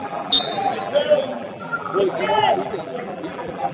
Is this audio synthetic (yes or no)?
yes